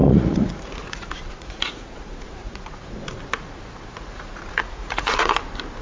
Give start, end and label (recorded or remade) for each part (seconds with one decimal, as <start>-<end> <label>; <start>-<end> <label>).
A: 0.0-3.2 remade; 3.2-3.9 recorded; 3.9-5.3 remade; 5.3-5.8 recorded